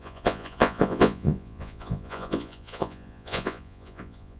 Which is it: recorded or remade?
remade